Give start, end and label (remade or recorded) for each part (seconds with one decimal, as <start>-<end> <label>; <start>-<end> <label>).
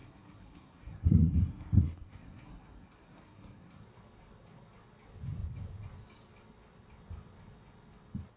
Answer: 0.0-3.8 remade; 3.8-8.4 recorded